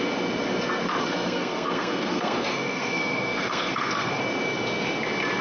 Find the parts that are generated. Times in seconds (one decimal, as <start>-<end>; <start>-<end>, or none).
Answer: 1.0-4.2